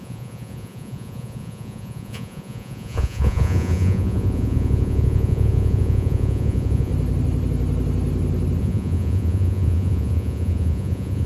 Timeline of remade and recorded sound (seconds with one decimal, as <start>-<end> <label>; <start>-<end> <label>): 0.0-6.9 remade; 6.9-8.6 recorded; 8.6-11.3 remade

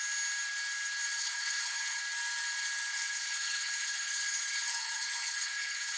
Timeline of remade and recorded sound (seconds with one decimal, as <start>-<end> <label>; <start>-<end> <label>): 0.0-1.2 recorded; 1.2-2.0 remade; 2.0-2.9 recorded; 2.9-6.0 remade

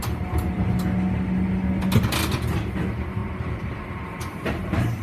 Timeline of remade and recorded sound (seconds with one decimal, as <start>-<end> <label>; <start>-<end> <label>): 0.0-3.2 recorded; 3.2-5.0 remade

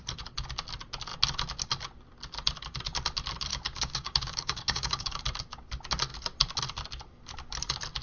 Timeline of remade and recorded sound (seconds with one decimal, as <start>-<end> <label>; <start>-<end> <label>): 0.0-3.5 recorded; 3.5-5.2 remade; 5.2-8.0 recorded